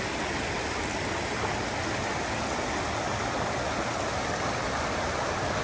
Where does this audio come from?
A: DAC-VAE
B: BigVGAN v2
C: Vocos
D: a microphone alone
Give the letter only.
D